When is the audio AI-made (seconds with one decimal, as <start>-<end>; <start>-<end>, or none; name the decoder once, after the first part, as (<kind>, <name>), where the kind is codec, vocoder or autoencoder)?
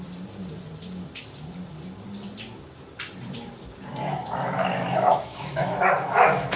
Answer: 4.2-6.6 (autoencoder, DAC-VAE)